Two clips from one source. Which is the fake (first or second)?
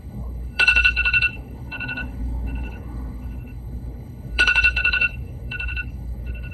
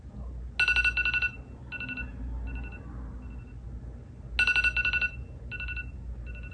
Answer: first